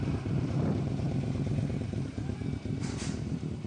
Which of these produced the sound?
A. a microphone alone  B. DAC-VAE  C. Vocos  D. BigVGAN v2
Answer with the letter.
D